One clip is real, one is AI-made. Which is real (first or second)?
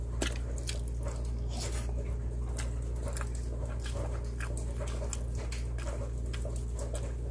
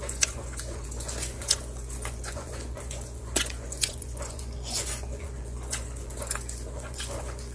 first